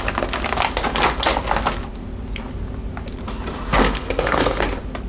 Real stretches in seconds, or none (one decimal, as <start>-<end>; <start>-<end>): 0.0-3.8; 4.6-5.1